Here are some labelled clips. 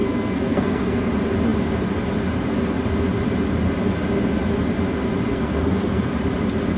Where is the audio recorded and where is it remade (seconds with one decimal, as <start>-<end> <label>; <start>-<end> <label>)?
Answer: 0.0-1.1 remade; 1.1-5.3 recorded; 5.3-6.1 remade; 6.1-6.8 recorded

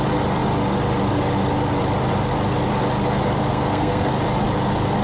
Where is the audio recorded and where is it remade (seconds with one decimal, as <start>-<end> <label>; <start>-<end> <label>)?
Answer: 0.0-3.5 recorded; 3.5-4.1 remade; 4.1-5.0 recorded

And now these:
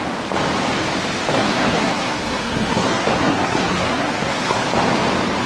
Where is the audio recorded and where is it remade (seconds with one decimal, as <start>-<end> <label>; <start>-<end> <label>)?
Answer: 0.0-1.3 recorded; 1.3-4.6 remade; 4.6-5.5 recorded

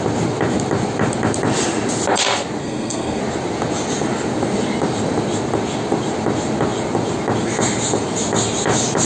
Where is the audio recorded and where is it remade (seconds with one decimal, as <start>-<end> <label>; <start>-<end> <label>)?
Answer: 0.0-2.6 recorded; 2.6-3.2 remade; 3.2-9.0 recorded

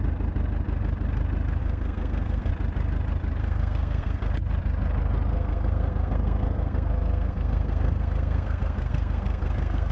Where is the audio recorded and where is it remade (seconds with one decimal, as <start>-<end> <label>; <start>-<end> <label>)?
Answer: 0.0-1.6 recorded; 1.6-2.5 remade; 2.5-3.4 recorded; 3.4-4.3 remade; 4.3-5.3 recorded; 5.3-9.9 remade

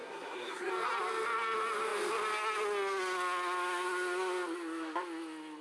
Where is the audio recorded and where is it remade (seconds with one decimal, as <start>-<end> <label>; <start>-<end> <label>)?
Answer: 0.0-0.7 remade; 0.7-5.6 recorded